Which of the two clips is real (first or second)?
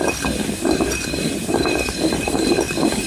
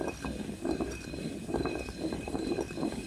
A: second